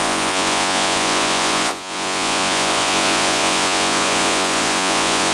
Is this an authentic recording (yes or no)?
no